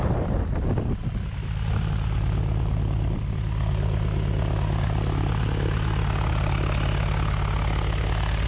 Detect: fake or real real